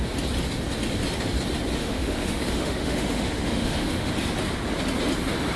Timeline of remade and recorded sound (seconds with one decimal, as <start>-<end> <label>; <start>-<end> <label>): 0.0-1.8 recorded; 1.8-4.1 remade; 4.1-5.6 recorded